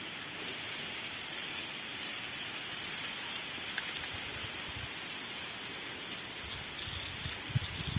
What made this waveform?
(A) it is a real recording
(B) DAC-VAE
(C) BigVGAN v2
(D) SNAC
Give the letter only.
A